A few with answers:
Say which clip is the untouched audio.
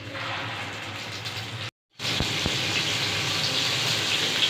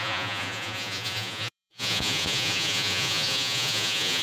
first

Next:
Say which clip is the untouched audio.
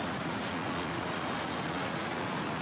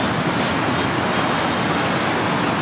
second